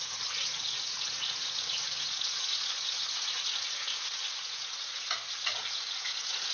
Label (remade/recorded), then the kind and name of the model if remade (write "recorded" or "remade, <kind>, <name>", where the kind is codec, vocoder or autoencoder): remade, vocoder, Vocos